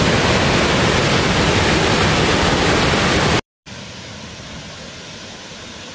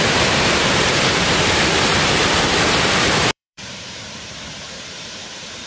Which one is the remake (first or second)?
second